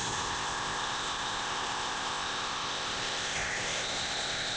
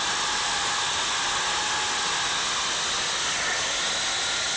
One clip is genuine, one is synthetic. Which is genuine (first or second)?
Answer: second